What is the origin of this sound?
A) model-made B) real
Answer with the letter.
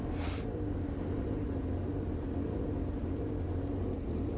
B